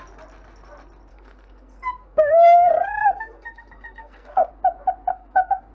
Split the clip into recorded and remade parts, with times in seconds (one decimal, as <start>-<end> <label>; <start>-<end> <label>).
0.0-1.1 recorded; 1.1-4.5 remade; 4.5-5.1 recorded; 5.1-5.7 remade